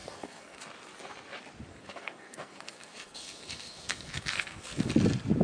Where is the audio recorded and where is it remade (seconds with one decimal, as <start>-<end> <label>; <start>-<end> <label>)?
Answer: 0.0-0.6 remade; 0.6-1.7 recorded; 1.7-4.9 remade; 4.9-5.4 recorded